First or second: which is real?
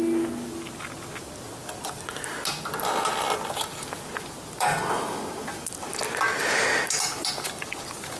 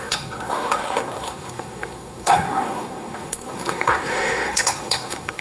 first